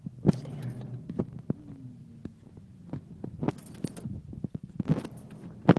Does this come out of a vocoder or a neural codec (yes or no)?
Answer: no